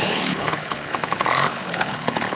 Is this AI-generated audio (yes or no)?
yes